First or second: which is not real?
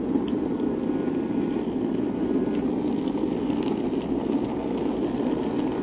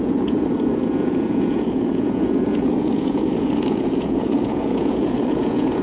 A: second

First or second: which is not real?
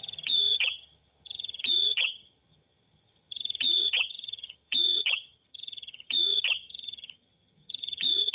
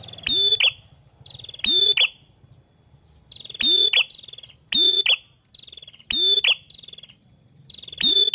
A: first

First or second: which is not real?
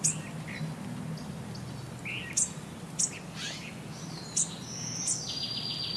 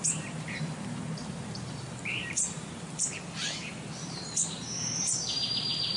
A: second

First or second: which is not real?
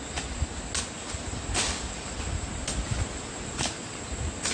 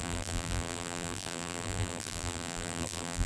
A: second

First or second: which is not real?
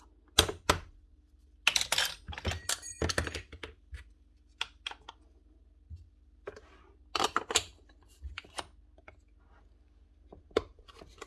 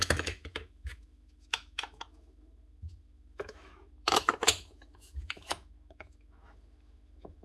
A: second